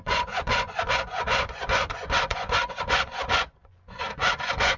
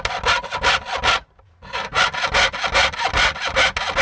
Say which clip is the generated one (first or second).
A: first